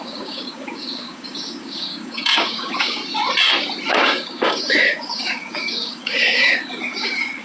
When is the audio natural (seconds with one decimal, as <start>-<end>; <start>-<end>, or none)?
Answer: 3.0-3.9